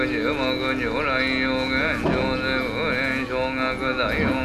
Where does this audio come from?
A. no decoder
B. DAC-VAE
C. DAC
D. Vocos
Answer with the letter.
A